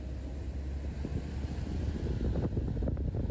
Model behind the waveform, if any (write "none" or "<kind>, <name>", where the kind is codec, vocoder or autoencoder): none